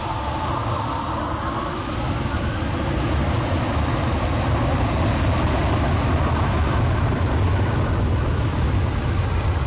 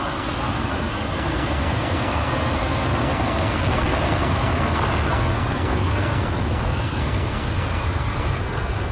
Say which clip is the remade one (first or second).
second